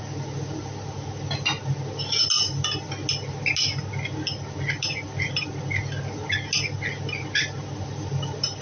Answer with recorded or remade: recorded